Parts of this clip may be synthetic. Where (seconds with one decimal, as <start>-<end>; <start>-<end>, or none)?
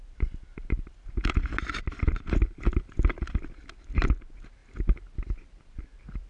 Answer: none